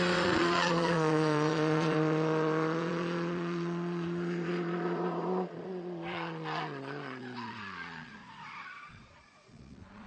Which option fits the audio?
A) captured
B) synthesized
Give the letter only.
B